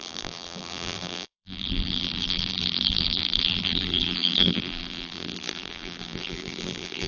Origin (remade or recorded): remade